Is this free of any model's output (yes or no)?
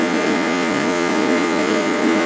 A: no